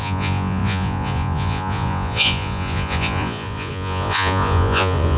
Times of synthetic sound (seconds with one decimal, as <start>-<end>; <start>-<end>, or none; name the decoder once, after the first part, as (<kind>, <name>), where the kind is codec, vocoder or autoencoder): 0.0-5.2 (vocoder, Vocos)